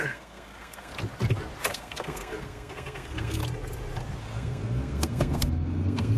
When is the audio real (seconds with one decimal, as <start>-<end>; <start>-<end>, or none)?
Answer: 0.9-1.7; 3.4-4.2